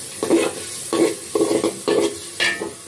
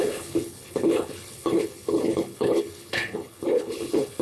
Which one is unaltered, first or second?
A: first